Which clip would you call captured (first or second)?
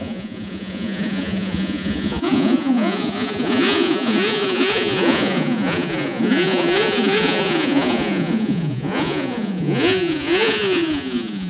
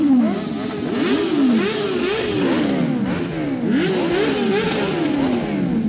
second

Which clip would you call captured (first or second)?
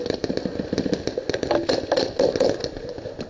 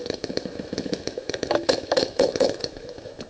first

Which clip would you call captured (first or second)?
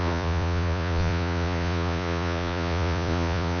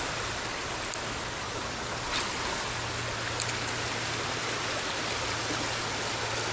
second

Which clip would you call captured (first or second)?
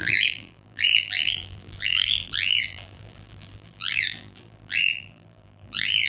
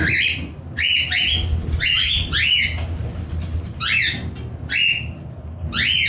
second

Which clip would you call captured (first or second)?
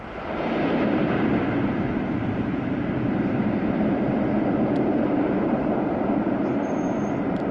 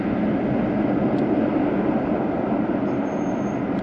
second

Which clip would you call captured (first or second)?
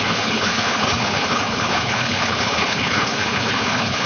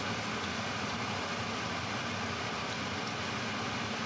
second